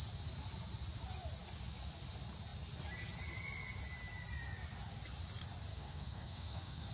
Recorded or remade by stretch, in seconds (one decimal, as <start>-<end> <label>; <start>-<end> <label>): 0.0-5.7 recorded; 5.7-6.9 remade